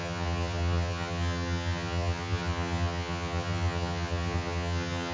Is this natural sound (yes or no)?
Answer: no